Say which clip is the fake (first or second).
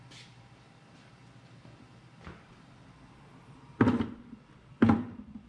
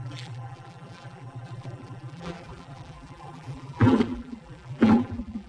second